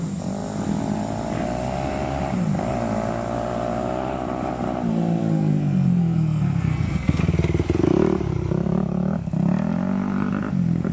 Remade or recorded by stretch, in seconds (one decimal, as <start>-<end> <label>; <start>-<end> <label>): 0.0-5.2 recorded; 5.2-7.2 remade; 7.2-10.9 recorded